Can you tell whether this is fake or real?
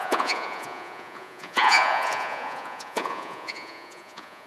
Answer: fake